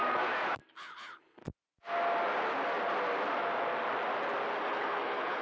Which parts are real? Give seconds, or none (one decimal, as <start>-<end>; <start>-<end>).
0.0-0.8; 1.4-4.6